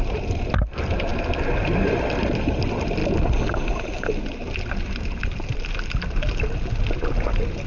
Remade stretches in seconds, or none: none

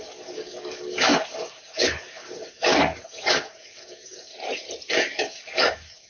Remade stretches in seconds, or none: 0.0-4.3 (codec, DAC); 4.9-6.1

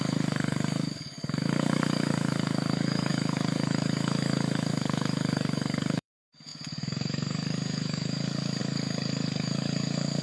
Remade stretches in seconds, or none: 0.0-10.2 (codec, DAC)

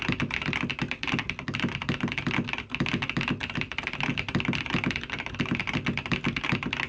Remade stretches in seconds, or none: none

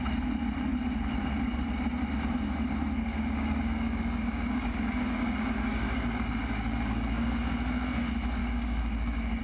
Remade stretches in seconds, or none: 3.1-7.3 (codec, DAC); 8.4-9.4

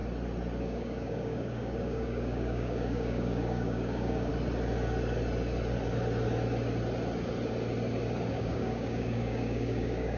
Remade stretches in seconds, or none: 0.6-4.3 (codec, DAC); 8.3-10.2

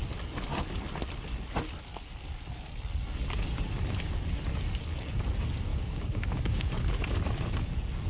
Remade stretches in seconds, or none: 5.7-6.9 (codec, DAC)

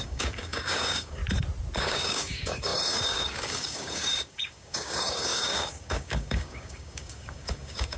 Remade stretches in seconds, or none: 0.0-1.2 (codec, DAC); 1.8-8.0